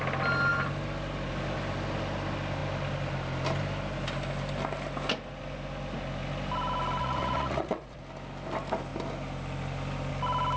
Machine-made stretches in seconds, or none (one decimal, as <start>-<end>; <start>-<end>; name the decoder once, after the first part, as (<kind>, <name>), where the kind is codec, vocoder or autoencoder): 7.0-8.0 (vocoder, Vocos)